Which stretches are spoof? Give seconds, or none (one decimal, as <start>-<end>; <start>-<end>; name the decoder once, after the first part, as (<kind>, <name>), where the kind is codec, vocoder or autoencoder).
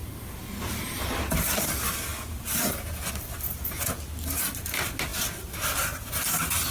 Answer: none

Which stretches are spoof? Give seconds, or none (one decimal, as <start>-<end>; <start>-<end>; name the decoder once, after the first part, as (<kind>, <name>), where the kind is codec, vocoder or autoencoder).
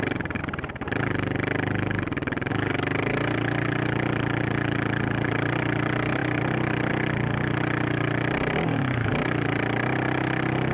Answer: none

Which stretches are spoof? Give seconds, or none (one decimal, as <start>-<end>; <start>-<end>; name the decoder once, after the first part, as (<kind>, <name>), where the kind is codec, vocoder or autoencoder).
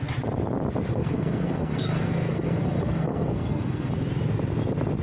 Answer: 0.9-3.9 (codec, SNAC)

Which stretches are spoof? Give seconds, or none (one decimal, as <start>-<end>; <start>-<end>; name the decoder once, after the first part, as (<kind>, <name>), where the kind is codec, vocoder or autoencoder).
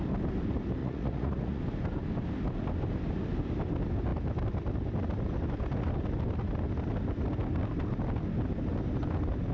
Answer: 0.8-1.6 (vocoder, Vocos)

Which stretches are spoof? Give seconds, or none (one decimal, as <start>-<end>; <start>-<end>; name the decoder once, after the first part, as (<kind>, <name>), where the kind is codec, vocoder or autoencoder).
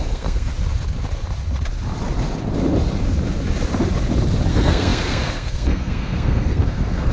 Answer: 0.0-0.5 (codec, SNAC); 4.5-7.1